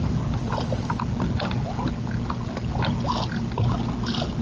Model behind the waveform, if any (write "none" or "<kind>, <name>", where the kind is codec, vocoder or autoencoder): none